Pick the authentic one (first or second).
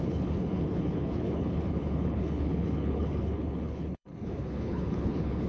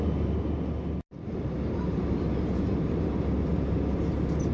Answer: second